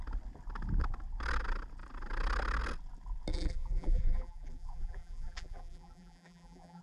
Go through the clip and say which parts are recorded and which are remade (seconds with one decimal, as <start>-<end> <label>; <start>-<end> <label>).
0.0-3.3 recorded; 3.3-6.8 remade